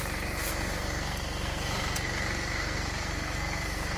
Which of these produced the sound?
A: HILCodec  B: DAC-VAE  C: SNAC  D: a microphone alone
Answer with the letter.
C